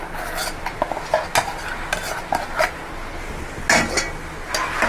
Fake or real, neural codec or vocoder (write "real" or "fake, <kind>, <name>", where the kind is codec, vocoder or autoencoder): real